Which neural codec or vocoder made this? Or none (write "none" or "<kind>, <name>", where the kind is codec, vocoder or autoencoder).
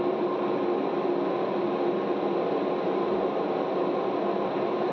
none